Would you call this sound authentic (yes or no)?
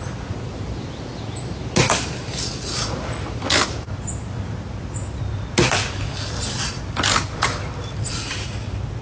yes